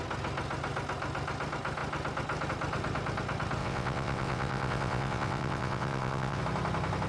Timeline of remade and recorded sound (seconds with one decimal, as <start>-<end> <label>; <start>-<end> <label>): 0.0-3.6 recorded; 3.6-6.4 remade; 6.4-7.1 recorded